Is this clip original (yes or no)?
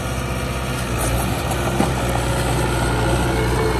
yes